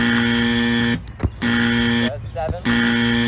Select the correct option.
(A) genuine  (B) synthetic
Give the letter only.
A